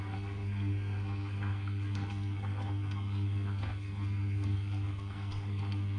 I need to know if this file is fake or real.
fake